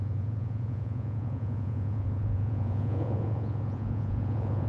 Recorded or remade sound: remade